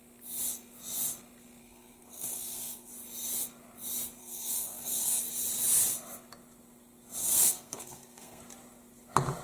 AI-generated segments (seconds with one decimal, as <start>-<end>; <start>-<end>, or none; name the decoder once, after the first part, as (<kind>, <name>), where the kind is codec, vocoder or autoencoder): 1.6-2.9 (codec, SNAC); 4.2-5.2; 7.2-8.4